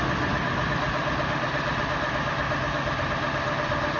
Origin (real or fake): real